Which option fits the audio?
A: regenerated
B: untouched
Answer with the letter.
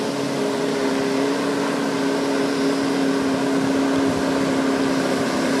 B